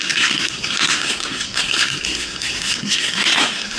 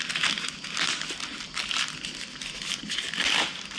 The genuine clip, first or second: second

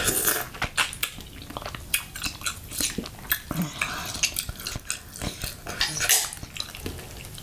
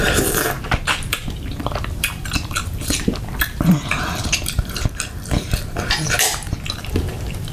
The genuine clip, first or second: first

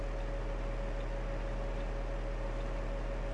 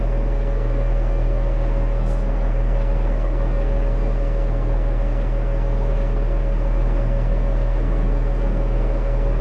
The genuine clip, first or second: first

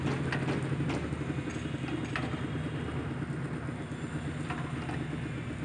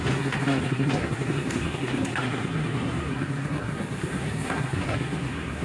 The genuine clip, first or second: first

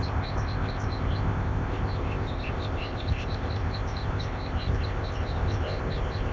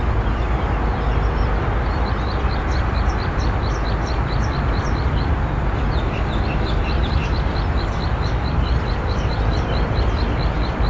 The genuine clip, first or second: second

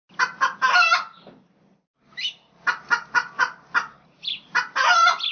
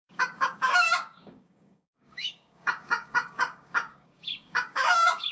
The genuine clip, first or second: first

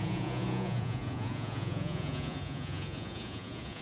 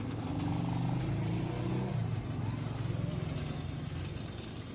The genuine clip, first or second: second